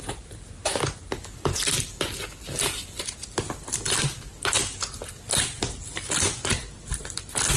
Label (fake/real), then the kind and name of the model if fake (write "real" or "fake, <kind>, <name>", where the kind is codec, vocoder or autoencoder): real